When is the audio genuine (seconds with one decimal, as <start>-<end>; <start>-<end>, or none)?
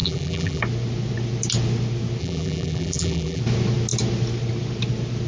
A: 0.6-2.2; 3.4-5.3